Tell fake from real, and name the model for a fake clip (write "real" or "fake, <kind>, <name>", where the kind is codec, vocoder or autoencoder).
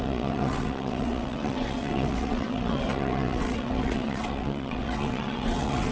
fake, vocoder, WaveNeXt